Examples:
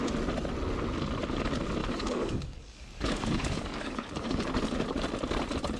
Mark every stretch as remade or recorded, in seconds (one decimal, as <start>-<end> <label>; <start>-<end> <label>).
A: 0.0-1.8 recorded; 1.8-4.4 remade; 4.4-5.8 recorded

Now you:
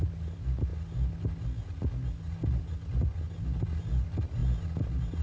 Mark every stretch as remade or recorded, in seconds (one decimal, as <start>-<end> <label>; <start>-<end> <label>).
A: 0.0-5.2 recorded

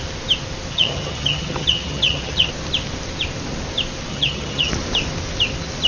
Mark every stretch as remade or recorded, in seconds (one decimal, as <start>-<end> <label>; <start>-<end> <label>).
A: 0.0-0.7 recorded; 0.7-2.5 remade; 2.5-4.1 recorded; 4.1-4.7 remade; 4.7-5.9 recorded

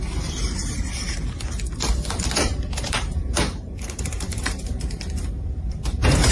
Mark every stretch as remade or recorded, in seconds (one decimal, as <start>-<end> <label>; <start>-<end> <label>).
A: 0.0-2.4 recorded; 2.4-6.3 remade

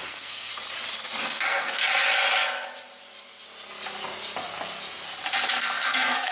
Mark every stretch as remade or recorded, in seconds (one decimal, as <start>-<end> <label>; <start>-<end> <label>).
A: 0.0-0.5 remade; 0.5-1.2 recorded; 1.2-1.8 remade; 1.8-5.5 recorded; 5.5-6.3 remade